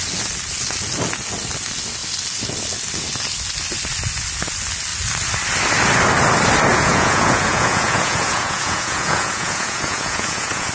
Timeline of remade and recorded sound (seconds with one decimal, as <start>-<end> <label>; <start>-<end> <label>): 0.0-6.7 recorded; 6.7-10.7 remade